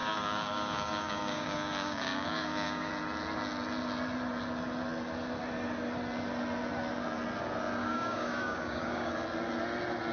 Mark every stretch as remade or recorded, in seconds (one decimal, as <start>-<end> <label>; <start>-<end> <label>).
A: 0.0-2.9 remade; 2.9-7.8 recorded; 7.8-9.1 remade; 9.1-10.1 recorded